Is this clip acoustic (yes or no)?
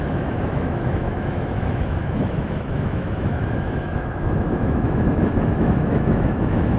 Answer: no